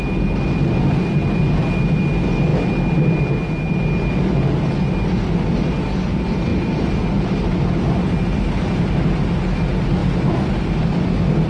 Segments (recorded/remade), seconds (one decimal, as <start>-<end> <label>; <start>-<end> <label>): 0.0-6.5 recorded; 6.5-8.0 remade; 8.0-11.5 recorded